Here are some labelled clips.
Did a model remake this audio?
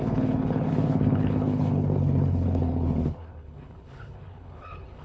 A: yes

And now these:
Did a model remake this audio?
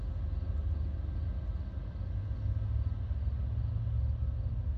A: no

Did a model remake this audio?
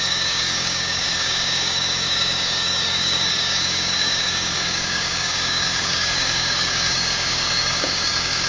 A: yes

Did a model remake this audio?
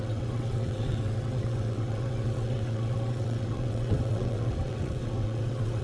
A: yes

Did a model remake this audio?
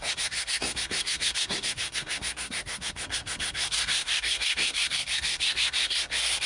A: yes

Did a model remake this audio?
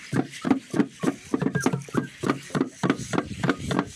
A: no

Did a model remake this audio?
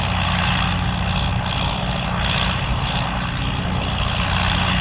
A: no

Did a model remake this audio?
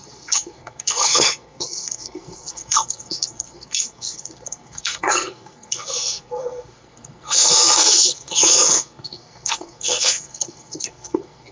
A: yes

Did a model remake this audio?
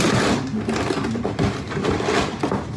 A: no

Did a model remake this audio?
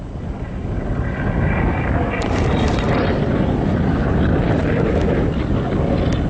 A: no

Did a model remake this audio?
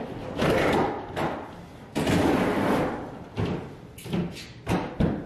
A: no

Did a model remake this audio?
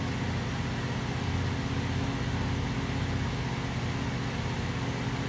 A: no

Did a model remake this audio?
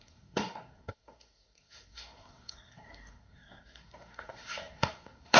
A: yes